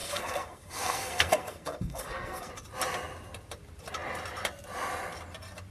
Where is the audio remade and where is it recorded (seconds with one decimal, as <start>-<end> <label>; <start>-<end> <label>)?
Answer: 0.0-2.5 remade; 2.5-5.7 recorded